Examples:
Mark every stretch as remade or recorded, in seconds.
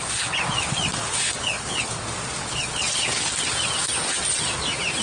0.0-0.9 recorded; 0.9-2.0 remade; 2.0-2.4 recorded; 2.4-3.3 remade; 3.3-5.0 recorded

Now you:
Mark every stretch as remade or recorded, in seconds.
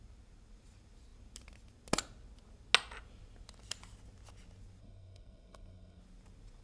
0.0-4.8 recorded; 4.8-6.0 remade; 6.0-6.6 recorded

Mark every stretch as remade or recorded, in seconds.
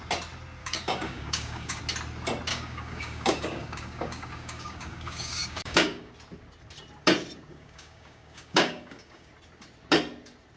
0.0-0.6 recorded; 0.6-1.8 remade; 1.8-2.5 recorded; 2.5-6.1 remade; 6.1-7.5 recorded; 7.5-9.3 remade; 9.3-10.6 recorded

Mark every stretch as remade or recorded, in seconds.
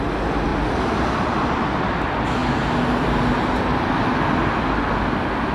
0.0-5.5 recorded